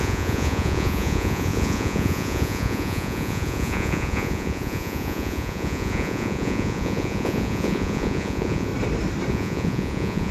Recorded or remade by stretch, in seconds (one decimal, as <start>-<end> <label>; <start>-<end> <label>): 0.0-8.7 remade; 8.7-9.3 recorded; 9.3-10.3 remade